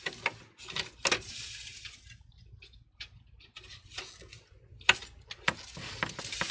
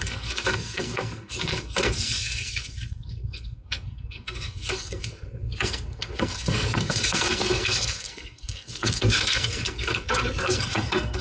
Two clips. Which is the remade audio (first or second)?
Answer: second